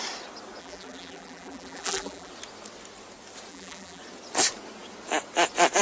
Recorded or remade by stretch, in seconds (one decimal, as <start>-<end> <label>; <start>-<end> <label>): 0.0-0.6 recorded; 0.6-2.3 remade; 2.3-3.5 recorded; 3.5-4.0 remade; 4.0-5.8 recorded